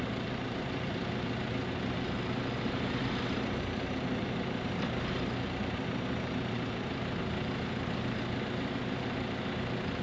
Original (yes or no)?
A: no